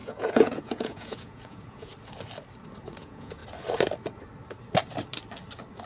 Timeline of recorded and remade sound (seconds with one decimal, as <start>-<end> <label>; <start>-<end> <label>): 0.0-1.9 remade; 1.9-2.9 recorded; 2.9-3.4 remade; 3.4-5.9 recorded